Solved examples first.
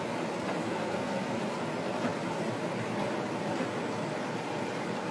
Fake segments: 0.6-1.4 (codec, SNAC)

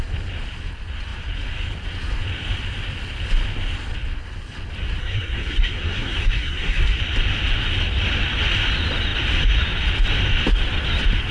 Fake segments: 5.0-7.0 (codec, SNAC)

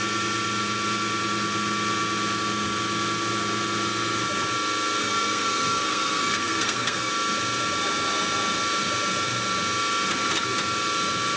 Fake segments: 5.0-7.1 (codec, SNAC)

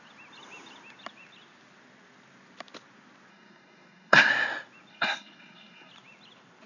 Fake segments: 3.3-4.3 (codec, SNAC); 4.9-5.9

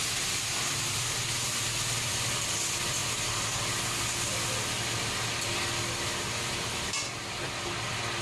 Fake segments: none